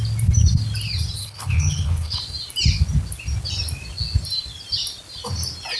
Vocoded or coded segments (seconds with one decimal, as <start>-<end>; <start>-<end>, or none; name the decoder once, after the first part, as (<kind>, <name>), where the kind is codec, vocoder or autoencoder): 1.2-2.2 (codec, HILCodec)